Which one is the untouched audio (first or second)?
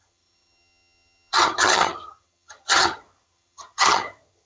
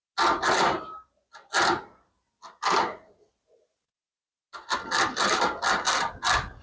second